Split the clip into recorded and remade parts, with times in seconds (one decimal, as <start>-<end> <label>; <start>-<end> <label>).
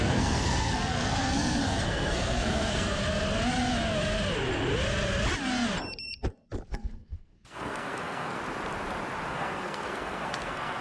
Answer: 0.0-3.0 remade; 3.0-6.7 recorded; 6.7-8.4 remade; 8.4-9.3 recorded; 9.3-10.8 remade